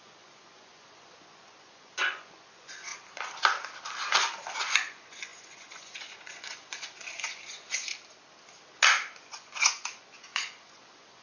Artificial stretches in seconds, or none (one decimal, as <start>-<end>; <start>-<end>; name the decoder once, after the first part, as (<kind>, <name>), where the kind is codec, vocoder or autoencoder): 0.0-2.9 (vocoder, Vocos); 4.7-7.9; 9.2-11.2